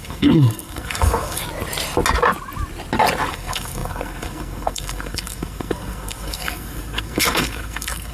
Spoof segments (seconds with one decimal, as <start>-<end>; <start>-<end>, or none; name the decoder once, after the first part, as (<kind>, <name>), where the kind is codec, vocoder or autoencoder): 0.0-1.4 (codec, SNAC); 3.3-8.1